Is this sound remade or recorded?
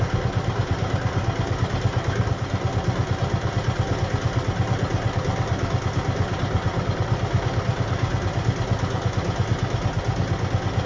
recorded